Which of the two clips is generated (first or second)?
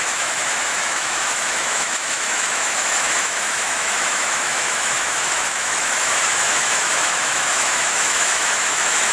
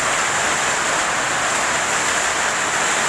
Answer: first